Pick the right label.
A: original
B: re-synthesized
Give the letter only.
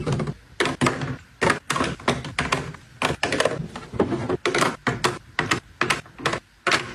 A